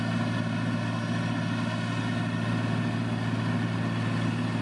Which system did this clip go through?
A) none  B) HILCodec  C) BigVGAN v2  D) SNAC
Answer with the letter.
A